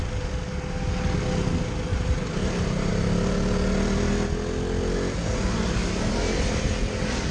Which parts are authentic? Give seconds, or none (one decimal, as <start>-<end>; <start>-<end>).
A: 0.0-1.9; 2.9-7.3